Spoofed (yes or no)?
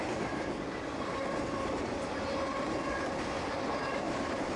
no